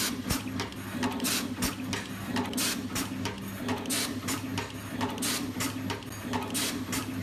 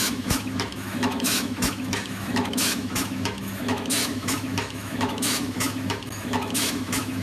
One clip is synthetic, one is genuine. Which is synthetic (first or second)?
second